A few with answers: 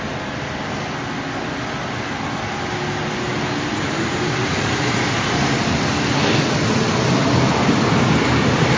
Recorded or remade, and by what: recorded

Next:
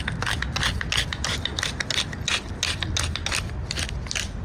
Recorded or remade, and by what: recorded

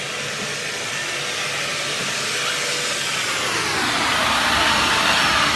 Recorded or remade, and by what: recorded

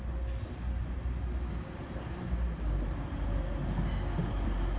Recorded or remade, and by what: recorded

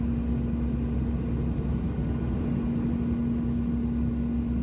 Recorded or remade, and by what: recorded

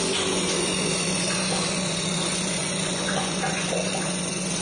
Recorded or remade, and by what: remade, vocoder, Vocos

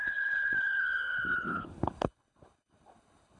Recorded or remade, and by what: remade, codec, HILCodec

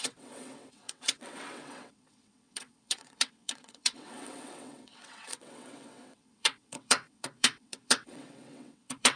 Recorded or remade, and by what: remade, vocoder, WaveNeXt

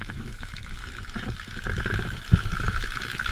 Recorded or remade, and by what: remade, autoencoder, DAC-VAE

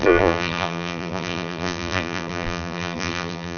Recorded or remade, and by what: remade, vocoder, BigVGAN v2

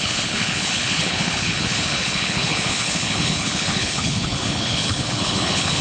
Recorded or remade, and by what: remade, codec, HILCodec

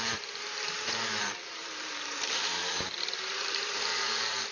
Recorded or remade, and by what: remade, vocoder, BigVGAN v2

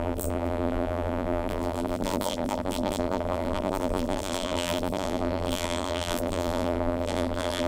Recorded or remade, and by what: remade, vocoder, BigVGAN v2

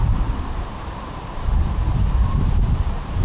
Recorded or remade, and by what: remade, vocoder, BigVGAN v2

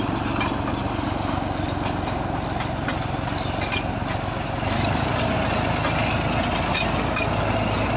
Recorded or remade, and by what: recorded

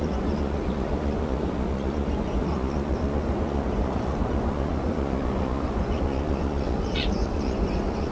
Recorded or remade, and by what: remade, vocoder, Vocos